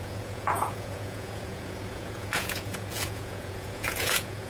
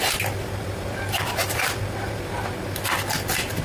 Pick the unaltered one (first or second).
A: second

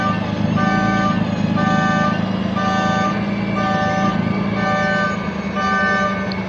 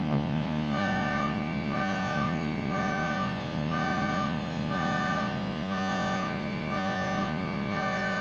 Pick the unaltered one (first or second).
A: first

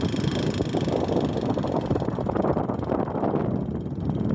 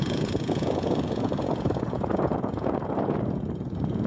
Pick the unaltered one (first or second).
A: first